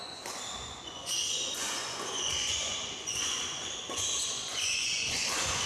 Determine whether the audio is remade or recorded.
remade